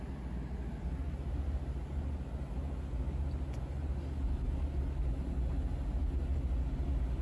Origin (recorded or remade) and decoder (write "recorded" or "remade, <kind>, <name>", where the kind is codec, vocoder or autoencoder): recorded